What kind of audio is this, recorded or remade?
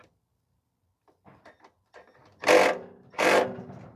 recorded